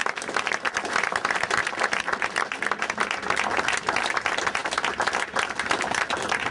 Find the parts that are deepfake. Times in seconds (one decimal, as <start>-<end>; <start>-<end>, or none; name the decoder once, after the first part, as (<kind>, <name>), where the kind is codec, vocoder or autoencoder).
none